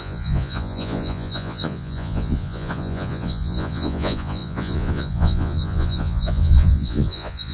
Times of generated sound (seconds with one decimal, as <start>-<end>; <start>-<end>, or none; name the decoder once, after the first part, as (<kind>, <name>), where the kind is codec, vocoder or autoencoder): 0.0-7.5 (vocoder, Vocos)

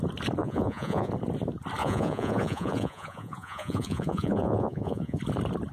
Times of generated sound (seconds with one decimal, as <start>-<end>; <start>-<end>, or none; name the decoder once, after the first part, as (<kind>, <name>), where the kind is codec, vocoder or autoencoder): 0.4-1.1 (vocoder, Vocos); 1.8-5.2

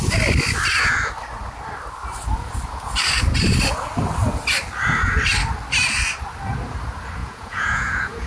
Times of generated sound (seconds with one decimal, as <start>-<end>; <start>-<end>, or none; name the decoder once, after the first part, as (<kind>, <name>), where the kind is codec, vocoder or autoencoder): 7.2-8.3 (vocoder, Vocos)